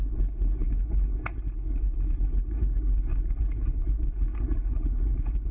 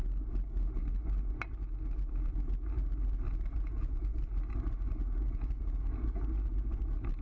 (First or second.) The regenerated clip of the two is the first